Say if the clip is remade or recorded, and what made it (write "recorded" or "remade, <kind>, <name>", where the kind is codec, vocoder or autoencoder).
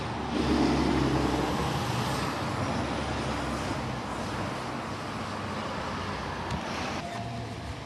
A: recorded